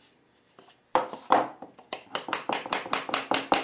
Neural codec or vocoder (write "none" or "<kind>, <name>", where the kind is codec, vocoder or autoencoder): none